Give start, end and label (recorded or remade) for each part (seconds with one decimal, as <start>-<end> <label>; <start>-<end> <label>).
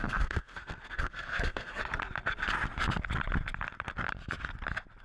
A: 0.0-1.8 remade; 1.8-5.0 recorded